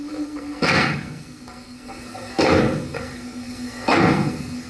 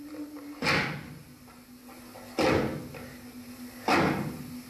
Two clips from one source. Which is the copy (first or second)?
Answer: first